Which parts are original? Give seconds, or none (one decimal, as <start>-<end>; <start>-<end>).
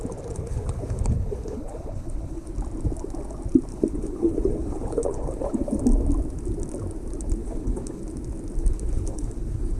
0.0-0.4; 2.5-3.7; 5.8-7.4; 8.0-8.6